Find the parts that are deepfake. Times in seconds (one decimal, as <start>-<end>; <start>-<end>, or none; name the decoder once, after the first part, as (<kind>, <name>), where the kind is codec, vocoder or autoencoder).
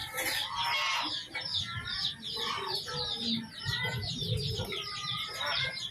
0.9-1.5 (vocoder, BigVGAN v2); 2.2-5.9